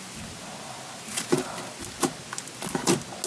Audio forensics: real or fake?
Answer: real